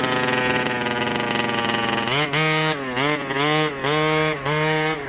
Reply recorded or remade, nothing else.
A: recorded